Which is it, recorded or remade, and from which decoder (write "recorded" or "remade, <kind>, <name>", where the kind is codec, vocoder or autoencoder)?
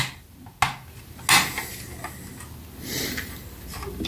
recorded